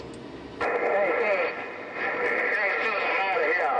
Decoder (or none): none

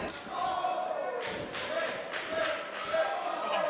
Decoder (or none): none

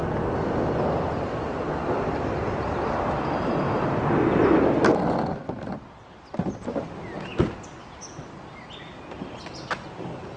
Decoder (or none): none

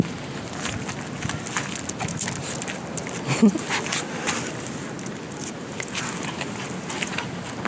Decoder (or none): none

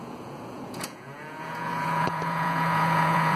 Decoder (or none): vocoder, Vocos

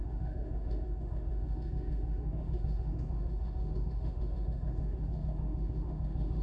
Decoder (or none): autoencoder, DAC-VAE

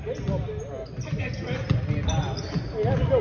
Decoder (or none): none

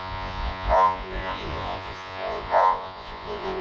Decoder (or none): vocoder, Vocos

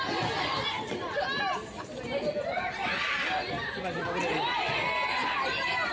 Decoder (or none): none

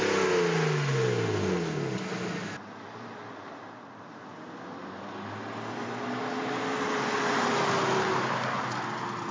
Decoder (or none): none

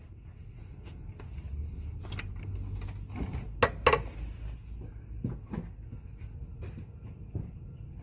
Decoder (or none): none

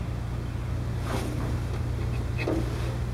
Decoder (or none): none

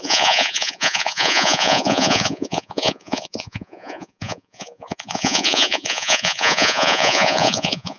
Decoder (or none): vocoder, Vocos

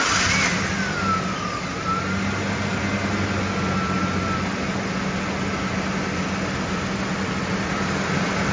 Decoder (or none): none